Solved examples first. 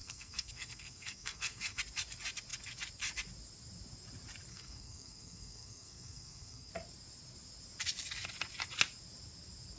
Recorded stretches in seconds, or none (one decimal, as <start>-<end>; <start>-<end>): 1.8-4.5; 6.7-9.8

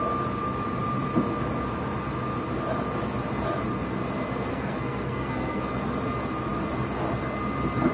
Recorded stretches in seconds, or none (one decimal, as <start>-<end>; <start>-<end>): 0.0-4.5; 5.6-7.9

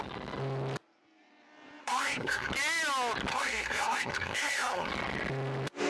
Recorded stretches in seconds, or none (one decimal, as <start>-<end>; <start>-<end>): 0.0-1.8; 2.5-3.3; 4.9-5.9

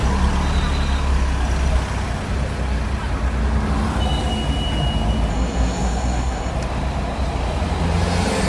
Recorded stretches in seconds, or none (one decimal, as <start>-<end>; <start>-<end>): 0.0-5.3; 6.5-8.5